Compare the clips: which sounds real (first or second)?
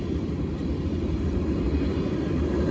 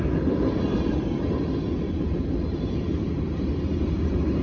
second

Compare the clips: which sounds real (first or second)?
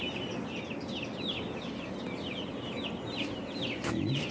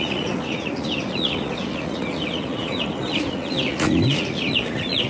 first